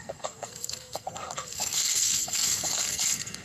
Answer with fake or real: fake